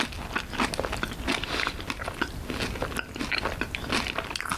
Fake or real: real